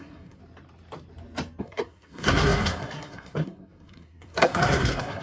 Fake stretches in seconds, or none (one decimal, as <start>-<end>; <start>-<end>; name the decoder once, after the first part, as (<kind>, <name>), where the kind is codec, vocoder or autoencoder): 0.0-0.4 (codec, SNAC); 1.6-5.2